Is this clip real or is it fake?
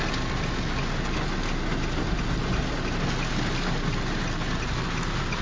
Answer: real